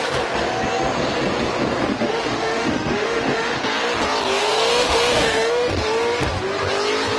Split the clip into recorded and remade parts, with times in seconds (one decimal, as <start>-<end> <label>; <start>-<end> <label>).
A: 0.0-1.8 recorded; 1.8-3.6 remade; 3.6-4.4 recorded; 4.4-5.7 remade; 5.7-7.2 recorded